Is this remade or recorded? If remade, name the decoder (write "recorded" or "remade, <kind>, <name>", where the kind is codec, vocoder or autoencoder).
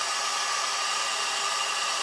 recorded